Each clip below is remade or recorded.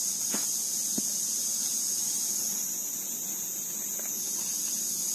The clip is recorded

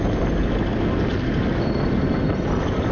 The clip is recorded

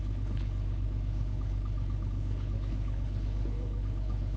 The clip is remade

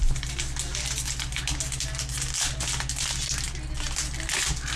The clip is recorded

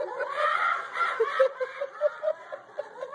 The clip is remade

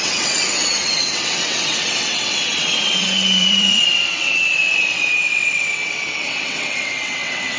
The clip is remade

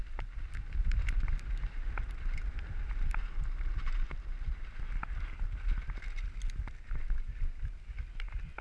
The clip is recorded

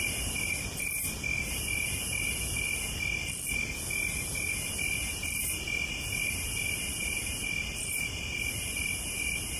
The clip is recorded